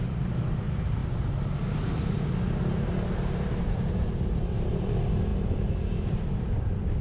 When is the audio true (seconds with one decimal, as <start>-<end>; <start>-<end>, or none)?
1.0-3.4